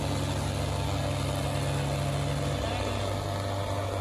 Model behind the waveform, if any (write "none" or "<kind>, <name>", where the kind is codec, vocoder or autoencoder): none